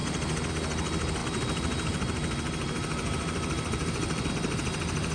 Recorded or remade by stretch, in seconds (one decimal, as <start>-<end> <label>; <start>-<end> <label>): 0.0-1.2 recorded; 1.2-4.3 remade; 4.3-5.1 recorded